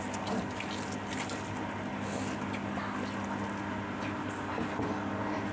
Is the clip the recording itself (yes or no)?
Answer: yes